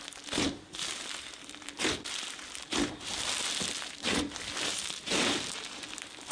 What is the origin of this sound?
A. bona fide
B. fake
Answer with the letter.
B